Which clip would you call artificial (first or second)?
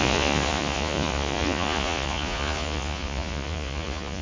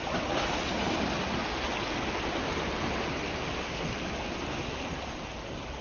first